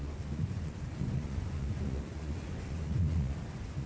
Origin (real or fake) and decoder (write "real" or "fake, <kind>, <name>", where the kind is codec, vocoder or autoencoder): fake, vocoder, Vocos